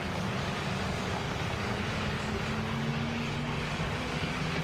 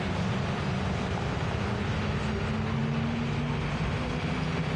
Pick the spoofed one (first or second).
first